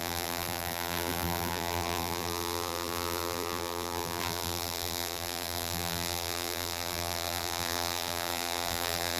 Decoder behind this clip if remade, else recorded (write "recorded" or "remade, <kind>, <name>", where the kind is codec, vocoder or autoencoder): remade, vocoder, BigVGAN v2